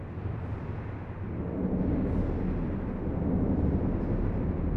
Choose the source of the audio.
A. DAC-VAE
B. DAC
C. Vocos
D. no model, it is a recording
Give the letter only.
D